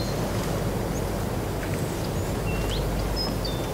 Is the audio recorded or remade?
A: recorded